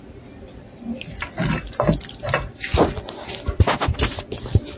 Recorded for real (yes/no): yes